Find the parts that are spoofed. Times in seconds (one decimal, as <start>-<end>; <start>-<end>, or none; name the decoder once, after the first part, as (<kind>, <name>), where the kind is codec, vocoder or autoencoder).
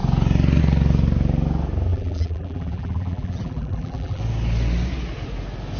1.9-4.2 (vocoder, BigVGAN v2)